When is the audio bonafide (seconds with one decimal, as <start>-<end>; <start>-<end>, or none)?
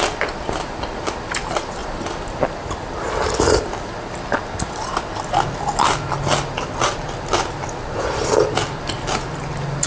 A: 0.0-9.9